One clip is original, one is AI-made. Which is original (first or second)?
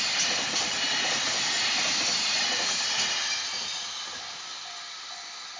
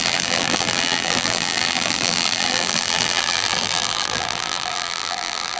first